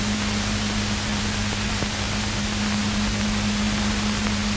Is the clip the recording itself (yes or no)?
yes